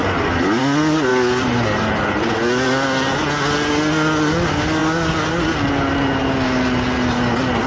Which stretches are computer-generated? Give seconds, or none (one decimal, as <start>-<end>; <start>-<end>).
none